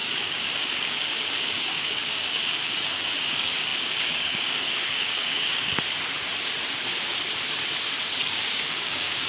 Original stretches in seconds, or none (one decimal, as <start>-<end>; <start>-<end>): 5.7-8.2